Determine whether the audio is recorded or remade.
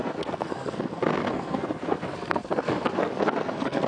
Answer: remade